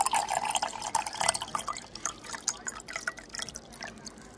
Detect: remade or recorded recorded